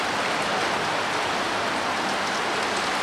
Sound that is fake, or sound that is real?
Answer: real